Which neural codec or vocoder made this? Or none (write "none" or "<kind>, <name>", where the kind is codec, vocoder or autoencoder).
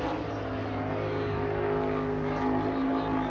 none